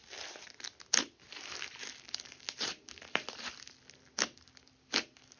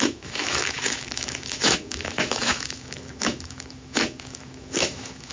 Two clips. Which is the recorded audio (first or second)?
first